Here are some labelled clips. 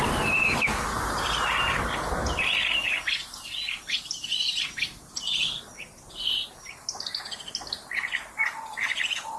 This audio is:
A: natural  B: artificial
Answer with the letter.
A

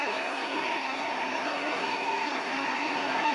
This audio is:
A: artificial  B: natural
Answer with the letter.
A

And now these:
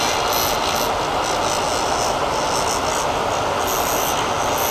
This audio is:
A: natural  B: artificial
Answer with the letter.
A